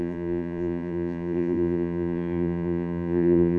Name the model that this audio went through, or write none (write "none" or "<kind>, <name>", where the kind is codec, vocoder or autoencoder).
vocoder, BigVGAN v2